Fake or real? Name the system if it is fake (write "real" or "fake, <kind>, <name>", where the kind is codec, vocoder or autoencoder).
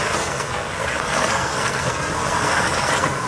fake, codec, SNAC